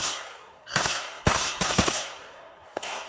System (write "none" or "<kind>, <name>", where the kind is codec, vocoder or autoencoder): codec, SNAC